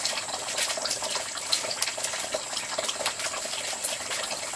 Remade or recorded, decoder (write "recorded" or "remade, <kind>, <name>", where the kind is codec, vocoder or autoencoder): recorded